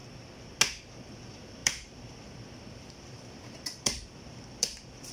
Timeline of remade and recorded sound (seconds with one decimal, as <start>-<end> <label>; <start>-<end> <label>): 0.0-1.1 recorded; 1.1-5.1 remade